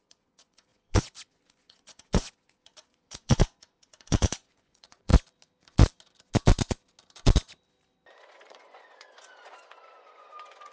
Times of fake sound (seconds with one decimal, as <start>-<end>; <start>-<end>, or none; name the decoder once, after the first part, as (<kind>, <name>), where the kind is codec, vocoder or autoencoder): 0.0-5.1 (vocoder, Vocos); 8.1-10.7